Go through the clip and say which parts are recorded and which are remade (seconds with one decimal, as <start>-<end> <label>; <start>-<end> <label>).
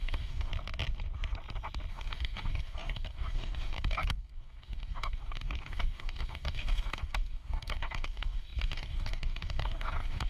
0.0-0.5 remade; 0.5-1.9 recorded; 1.9-10.3 remade